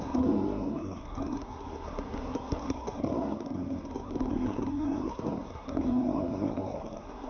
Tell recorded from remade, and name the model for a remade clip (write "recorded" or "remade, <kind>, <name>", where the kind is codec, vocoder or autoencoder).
remade, codec, SNAC